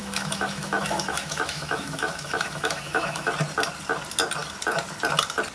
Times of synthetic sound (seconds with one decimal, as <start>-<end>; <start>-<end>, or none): 0.0-3.3